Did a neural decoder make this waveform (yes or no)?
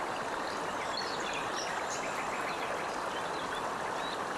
no